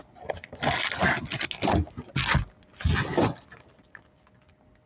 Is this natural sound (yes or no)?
yes